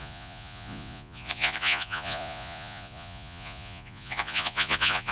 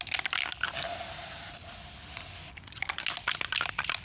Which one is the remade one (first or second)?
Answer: first